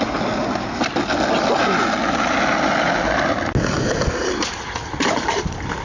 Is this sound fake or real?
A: real